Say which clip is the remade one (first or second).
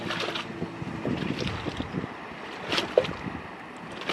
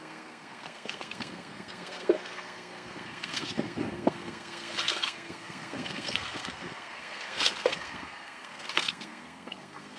second